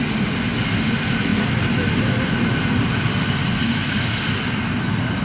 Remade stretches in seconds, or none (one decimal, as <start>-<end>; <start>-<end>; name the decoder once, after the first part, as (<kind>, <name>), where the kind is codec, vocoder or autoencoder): none